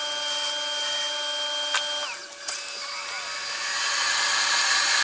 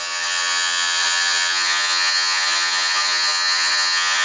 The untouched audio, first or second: first